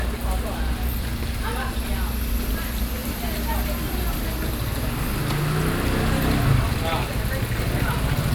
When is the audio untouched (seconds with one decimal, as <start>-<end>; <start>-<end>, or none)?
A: 0.0-8.3